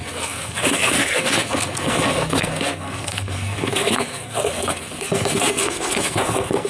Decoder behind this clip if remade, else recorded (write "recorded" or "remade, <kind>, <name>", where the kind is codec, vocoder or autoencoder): remade, codec, SNAC